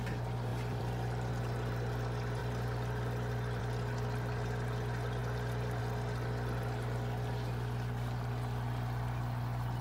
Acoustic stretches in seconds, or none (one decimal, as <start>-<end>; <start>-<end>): 0.0-0.5; 1.3-2.4; 3.6-5.2; 5.8-9.8